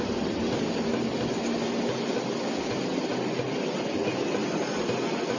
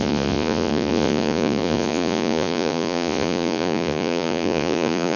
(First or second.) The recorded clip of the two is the first